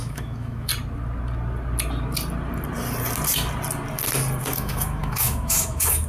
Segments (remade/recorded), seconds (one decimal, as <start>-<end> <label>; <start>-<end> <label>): 0.0-0.7 remade; 0.7-4.4 recorded; 4.4-6.1 remade